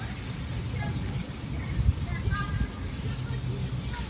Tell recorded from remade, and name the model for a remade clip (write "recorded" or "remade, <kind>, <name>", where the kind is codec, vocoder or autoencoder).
recorded